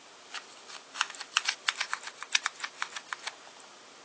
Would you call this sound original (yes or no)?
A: yes